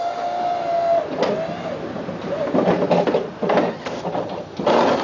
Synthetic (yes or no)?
no